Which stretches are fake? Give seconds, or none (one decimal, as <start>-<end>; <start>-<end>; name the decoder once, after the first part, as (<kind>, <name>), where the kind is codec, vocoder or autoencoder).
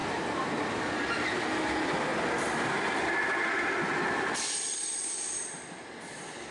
0.0-0.6 (vocoder, BigVGAN v2); 2.1-6.0